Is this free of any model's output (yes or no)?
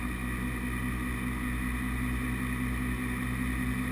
yes